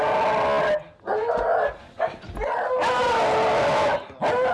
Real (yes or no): yes